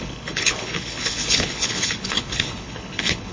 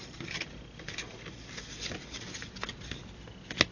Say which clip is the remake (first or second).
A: first